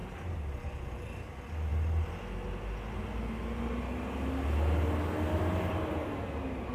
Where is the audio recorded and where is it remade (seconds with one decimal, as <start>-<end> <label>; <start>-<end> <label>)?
0.0-0.6 remade; 0.6-6.7 recorded